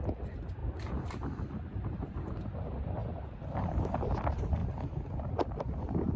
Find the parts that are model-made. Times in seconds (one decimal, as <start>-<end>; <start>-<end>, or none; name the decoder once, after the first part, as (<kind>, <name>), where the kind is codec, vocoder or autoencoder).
0.0-3.0 (vocoder, BigVGAN v2); 3.7-4.6; 5.1-6.2